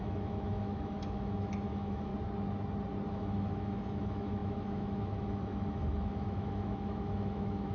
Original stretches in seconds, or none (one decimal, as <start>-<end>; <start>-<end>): 2.1-3.1